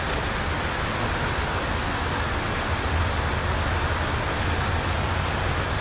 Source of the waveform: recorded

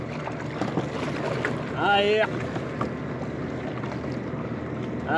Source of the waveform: recorded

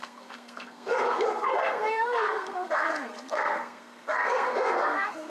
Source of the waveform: remade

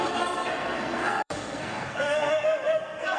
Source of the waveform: remade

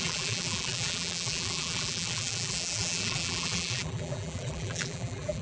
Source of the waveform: remade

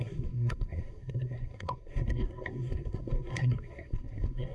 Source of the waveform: remade